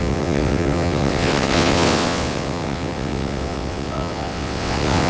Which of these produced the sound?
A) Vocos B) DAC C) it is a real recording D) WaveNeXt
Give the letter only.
D